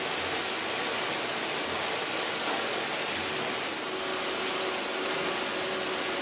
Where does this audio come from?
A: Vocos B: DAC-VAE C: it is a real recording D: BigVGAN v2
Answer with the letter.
C